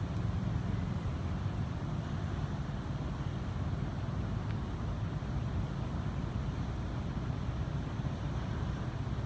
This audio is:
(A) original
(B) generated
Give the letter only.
A